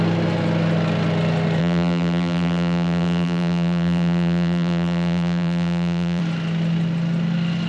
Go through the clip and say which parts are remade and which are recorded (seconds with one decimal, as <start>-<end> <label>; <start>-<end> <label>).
0.0-1.6 recorded; 1.6-6.2 remade; 6.2-7.7 recorded